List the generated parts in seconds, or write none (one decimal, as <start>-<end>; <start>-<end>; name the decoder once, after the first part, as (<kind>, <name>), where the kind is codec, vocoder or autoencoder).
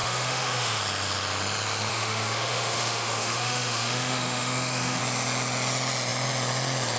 0.0-0.8 (autoencoder, DAC-VAE); 1.9-5.0